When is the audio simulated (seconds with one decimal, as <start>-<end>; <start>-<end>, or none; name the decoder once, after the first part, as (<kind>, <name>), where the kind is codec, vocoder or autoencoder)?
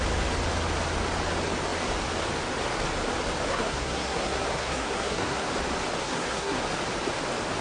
3.5-5.5 (codec, SNAC); 6.0-6.6